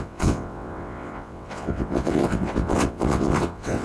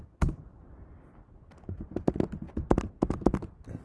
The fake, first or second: first